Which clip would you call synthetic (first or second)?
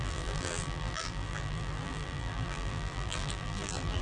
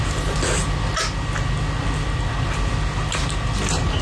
first